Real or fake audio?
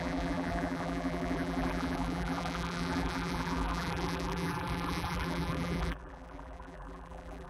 fake